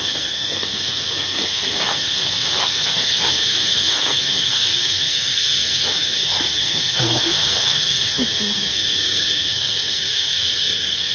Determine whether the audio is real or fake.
fake